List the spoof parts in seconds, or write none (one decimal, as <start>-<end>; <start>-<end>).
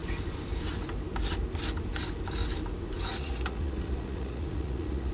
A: 3.1-5.1